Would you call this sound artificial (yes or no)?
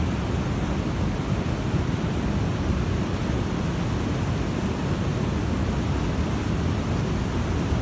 no